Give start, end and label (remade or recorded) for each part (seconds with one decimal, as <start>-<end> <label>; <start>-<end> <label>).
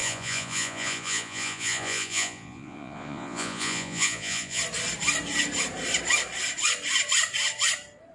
0.0-4.6 remade; 4.6-8.1 recorded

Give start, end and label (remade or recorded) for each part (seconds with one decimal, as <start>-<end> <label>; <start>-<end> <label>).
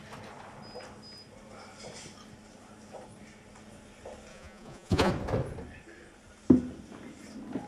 0.0-4.3 recorded; 4.3-5.1 remade; 5.1-7.7 recorded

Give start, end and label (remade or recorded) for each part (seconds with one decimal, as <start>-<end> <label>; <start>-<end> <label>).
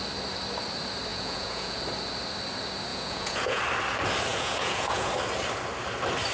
0.0-1.1 recorded; 1.1-1.8 remade; 1.8-2.9 recorded; 2.9-3.6 remade; 3.6-4.3 recorded; 4.3-5.1 remade; 5.1-6.3 recorded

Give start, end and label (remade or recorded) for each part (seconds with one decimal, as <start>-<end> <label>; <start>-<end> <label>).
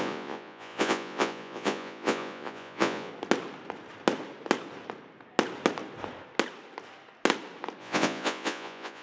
0.0-3.1 remade; 3.1-7.8 recorded; 7.8-9.0 remade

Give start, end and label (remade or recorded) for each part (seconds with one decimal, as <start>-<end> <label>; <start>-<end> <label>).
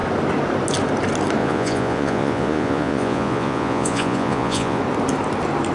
0.0-1.4 recorded; 1.4-4.8 remade; 4.8-5.7 recorded